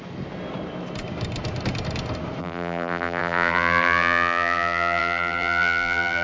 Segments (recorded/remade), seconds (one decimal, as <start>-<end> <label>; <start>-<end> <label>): 0.0-2.4 recorded; 2.4-6.2 remade